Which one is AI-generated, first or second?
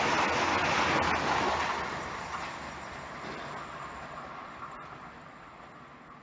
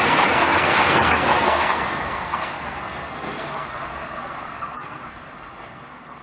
second